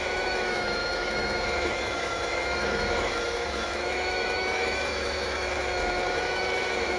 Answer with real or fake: fake